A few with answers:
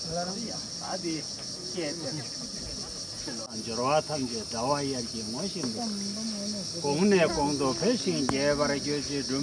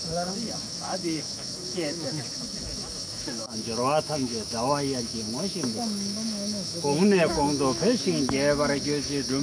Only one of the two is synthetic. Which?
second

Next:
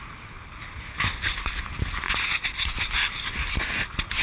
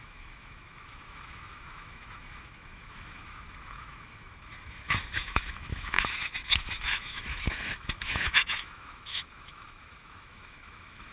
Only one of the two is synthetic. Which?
second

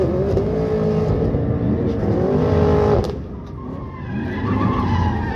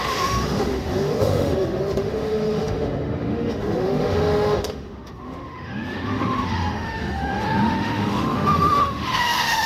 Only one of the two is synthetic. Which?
second